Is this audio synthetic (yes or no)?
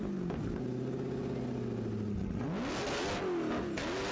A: no